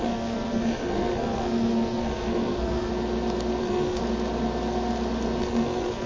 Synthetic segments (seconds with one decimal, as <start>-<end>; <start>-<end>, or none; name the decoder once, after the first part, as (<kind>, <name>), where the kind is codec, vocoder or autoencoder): 0.0-2.9 (codec, SNAC); 3.6-4.0; 5.4-6.1